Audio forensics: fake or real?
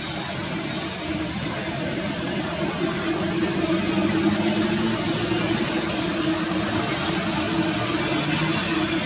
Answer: real